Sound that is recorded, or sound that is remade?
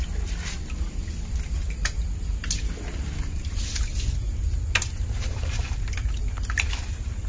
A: recorded